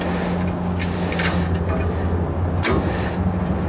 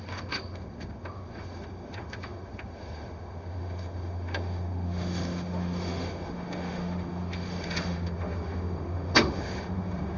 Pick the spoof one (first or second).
second